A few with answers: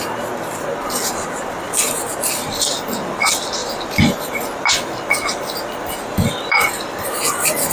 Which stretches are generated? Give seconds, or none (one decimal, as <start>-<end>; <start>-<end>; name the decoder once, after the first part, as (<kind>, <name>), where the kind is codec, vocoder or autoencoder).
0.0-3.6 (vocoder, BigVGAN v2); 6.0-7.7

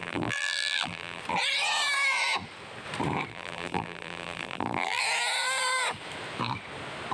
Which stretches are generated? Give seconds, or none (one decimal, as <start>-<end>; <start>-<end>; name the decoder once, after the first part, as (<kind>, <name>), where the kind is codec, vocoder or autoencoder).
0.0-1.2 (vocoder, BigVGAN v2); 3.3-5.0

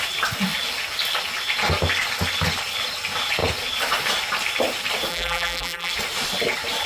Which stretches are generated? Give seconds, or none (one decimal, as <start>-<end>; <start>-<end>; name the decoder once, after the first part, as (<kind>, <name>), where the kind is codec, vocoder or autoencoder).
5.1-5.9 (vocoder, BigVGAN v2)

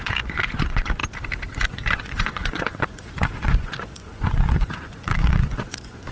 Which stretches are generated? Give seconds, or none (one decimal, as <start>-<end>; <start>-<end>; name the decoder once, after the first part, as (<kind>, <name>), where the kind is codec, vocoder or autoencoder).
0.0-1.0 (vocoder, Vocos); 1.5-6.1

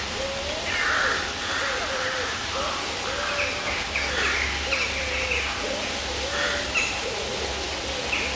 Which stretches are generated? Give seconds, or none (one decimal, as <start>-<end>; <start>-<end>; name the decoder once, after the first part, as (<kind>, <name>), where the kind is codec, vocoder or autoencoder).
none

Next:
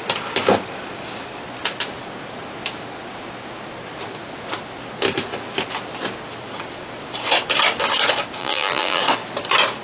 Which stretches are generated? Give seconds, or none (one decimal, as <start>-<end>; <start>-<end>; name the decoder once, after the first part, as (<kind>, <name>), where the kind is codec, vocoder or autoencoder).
8.4-9.0 (vocoder, BigVGAN v2)